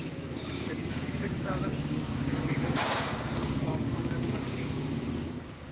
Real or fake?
fake